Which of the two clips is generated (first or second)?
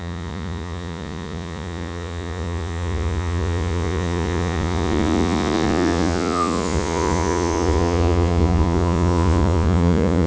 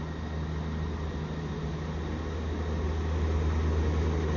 first